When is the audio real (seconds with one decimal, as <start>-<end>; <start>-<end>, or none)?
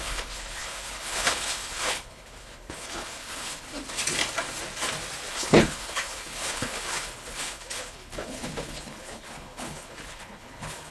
3.7-5.3